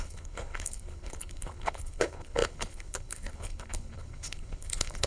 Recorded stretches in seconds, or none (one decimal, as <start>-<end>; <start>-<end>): none